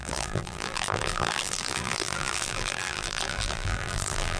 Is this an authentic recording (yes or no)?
no